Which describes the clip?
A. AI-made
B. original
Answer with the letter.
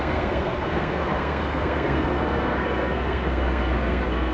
A